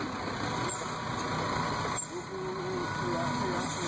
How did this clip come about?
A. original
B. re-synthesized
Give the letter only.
A